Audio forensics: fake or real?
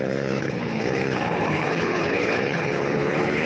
fake